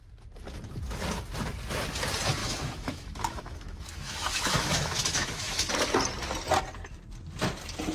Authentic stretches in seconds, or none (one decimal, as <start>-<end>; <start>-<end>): 0.0-2.4; 5.7-7.9